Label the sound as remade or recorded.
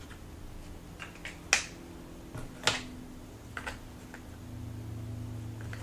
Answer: recorded